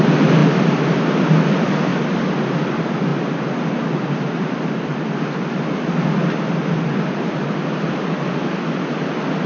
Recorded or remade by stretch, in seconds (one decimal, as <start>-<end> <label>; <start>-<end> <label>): 0.0-9.5 recorded